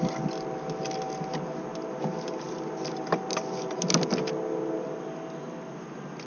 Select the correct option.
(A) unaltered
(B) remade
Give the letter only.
A